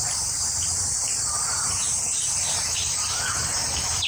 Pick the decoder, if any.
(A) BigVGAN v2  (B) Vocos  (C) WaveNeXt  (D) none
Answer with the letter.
A